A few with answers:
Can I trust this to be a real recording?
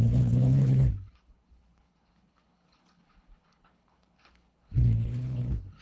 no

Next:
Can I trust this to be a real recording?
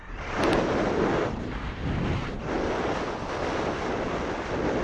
yes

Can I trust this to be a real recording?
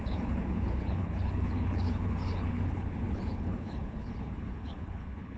no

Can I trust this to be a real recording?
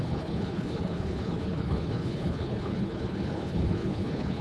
no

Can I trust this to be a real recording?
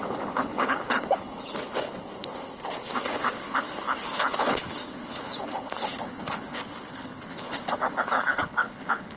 no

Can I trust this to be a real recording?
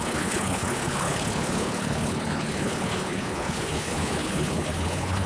no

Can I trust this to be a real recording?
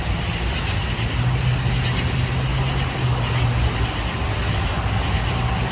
yes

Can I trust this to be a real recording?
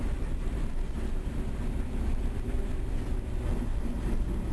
yes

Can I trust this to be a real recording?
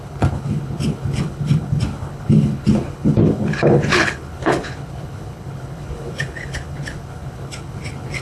no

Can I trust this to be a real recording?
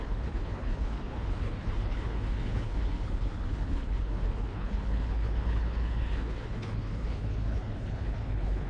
no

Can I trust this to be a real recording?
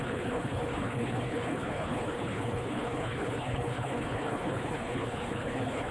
no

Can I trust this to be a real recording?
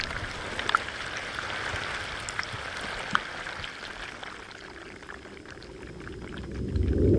yes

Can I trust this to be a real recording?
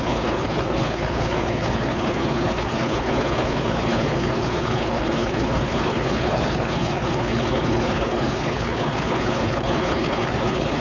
no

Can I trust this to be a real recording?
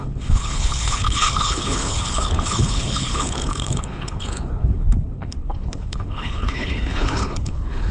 no